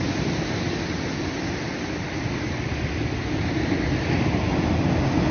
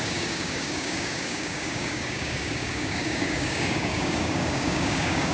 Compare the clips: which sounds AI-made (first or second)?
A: second